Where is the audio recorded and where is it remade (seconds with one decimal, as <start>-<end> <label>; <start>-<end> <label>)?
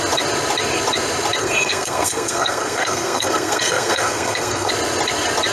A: 0.0-1.4 recorded; 1.4-4.7 remade; 4.7-5.5 recorded